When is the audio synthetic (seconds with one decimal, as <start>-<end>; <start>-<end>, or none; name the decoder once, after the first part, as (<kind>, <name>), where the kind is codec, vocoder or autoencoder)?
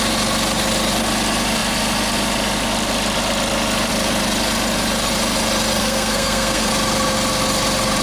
5.8-6.7 (codec, SNAC)